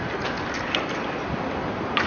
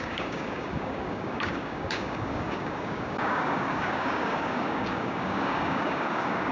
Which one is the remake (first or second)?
second